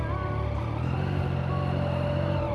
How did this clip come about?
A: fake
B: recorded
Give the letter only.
B